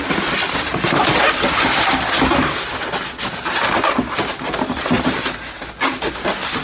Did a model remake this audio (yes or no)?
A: no